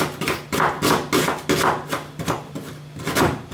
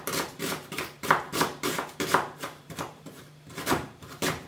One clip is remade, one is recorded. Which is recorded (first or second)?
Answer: first